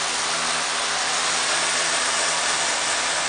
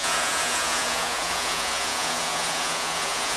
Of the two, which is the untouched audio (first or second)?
first